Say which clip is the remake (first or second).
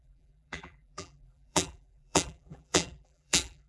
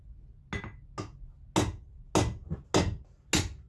first